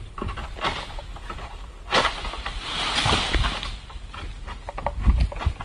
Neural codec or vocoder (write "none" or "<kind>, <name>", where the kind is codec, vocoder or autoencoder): none